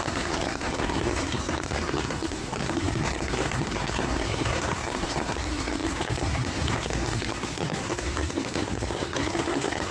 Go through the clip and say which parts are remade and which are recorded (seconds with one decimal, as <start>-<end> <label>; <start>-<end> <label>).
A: 0.0-9.9 remade